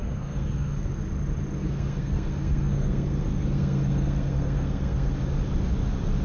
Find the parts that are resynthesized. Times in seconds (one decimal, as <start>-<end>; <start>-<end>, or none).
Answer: 0.0-0.9; 1.6-5.1